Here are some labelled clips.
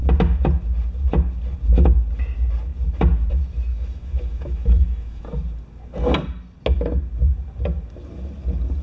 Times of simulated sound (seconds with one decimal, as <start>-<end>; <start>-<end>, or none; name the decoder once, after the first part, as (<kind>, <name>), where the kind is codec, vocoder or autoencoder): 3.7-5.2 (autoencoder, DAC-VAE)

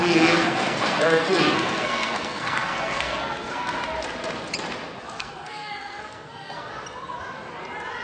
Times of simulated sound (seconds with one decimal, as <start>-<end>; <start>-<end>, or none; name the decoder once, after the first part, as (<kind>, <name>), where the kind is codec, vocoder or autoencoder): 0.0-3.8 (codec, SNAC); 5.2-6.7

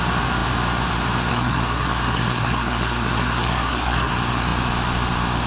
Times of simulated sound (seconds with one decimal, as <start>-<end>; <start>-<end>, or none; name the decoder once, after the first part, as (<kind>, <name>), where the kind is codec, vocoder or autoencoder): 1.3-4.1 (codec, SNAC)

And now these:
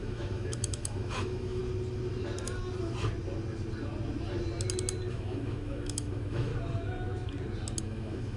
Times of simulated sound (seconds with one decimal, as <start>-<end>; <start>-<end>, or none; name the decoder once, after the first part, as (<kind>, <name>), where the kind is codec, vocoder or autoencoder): 0.0-1.6 (autoencoder, DAC-VAE); 5.1-6.5; 7.8-8.4

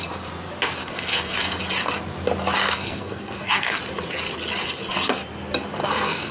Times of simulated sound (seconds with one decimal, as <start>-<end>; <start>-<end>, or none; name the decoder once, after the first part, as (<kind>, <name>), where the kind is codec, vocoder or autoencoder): 0.8-1.6 (codec, SNAC); 2.6-3.8; 5.8-6.3

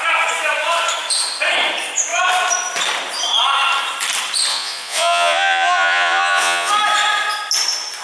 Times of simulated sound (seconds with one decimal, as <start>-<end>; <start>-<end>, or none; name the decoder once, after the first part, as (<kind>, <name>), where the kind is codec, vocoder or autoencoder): 4.5-6.7 (vocoder, Vocos)

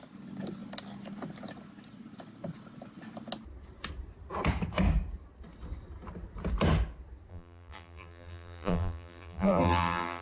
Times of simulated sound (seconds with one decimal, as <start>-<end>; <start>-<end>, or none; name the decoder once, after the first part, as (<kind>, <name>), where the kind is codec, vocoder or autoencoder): 7.3-10.2 (vocoder, BigVGAN v2)